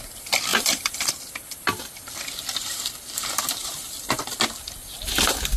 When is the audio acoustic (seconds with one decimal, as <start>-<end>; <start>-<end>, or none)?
0.0-0.5; 1.1-3.6; 4.2-5.6